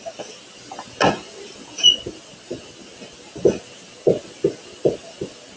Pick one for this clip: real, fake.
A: real